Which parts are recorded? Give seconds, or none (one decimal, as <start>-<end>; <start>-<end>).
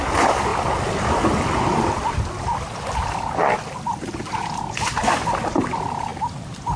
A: 0.0-6.8